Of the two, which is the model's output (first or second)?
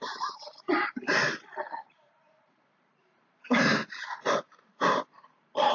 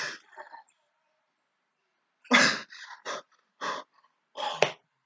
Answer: first